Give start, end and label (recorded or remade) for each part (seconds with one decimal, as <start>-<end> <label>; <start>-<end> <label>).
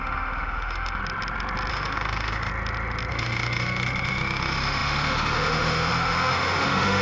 0.0-1.0 remade; 1.0-1.7 recorded; 1.7-2.5 remade; 2.5-3.1 recorded; 3.1-7.0 remade